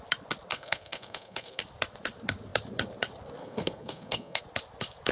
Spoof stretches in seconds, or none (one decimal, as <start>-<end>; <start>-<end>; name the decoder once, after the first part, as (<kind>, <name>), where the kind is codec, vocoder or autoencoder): 0.5-1.6 (codec, SNAC); 3.4-4.4